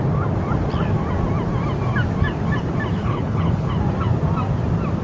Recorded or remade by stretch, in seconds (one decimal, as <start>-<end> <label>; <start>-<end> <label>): 0.0-3.0 recorded; 3.0-3.7 remade; 3.7-5.0 recorded